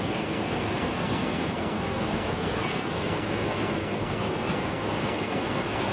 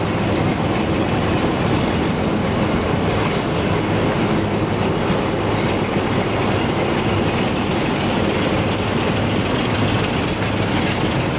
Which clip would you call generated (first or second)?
first